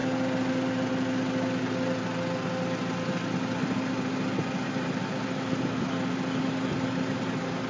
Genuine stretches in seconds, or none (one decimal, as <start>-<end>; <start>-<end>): 0.0-7.7